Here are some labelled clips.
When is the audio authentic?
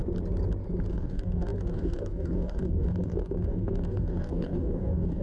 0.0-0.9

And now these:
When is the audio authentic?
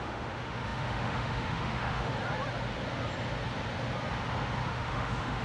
2.1-4.7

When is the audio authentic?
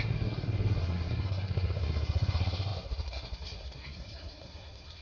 none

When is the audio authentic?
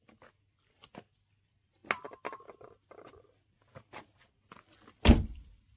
0.0-5.8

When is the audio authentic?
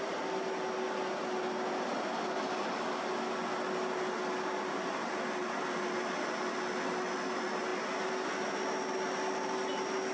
0.0-10.1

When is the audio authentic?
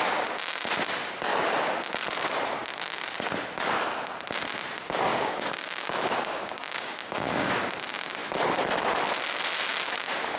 0.0-5.1; 7.5-10.4